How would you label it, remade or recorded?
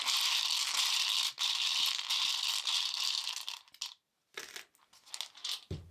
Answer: recorded